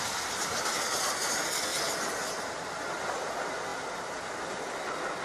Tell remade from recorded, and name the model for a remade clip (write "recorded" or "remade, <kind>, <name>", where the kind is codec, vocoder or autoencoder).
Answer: recorded